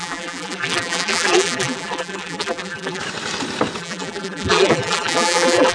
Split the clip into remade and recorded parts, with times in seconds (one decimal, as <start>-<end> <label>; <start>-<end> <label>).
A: 0.0-3.0 remade; 3.0-3.8 recorded; 3.8-5.7 remade